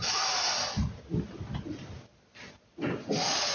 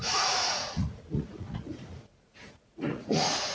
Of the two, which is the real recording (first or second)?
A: first